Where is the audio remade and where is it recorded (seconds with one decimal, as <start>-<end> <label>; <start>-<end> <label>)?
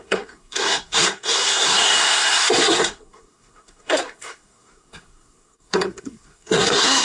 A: 0.0-7.0 remade